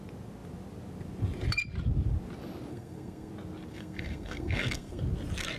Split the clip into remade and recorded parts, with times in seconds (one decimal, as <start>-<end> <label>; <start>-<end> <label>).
0.0-2.7 recorded; 2.7-3.3 remade; 3.3-3.7 recorded; 3.7-5.0 remade; 5.0-5.6 recorded